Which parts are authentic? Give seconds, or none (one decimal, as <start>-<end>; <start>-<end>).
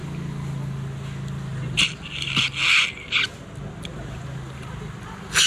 0.0-5.5